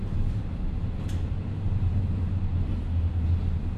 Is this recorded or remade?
recorded